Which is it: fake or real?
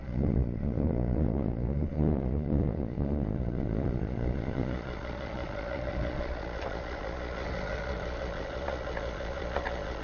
fake